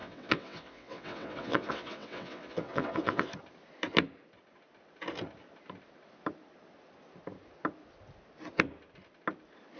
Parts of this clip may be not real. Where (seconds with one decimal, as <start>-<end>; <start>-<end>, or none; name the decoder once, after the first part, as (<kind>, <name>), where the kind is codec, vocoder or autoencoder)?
0.0-3.3 (vocoder, WaveNeXt)